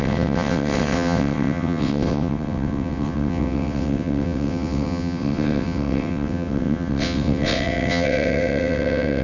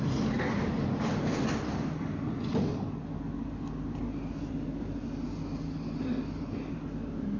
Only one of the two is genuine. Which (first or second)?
second